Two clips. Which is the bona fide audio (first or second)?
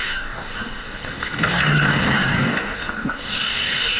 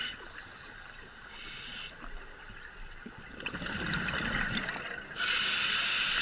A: second